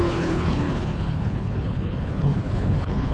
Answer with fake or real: fake